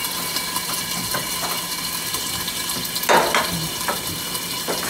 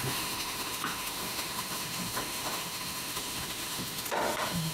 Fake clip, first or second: second